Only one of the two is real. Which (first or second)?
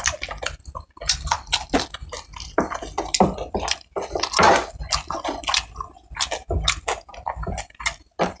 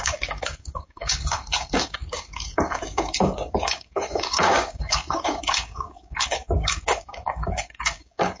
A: first